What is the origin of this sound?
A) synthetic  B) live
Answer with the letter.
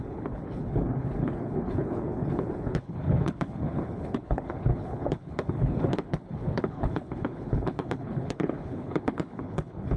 A